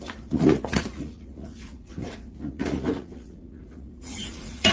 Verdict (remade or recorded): remade